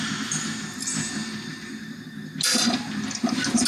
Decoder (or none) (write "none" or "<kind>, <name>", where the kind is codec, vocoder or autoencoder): none